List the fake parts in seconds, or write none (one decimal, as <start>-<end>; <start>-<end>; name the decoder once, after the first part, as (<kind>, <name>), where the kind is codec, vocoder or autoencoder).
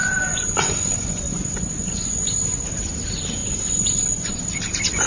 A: 0.0-2.7 (vocoder, Vocos); 3.4-4.4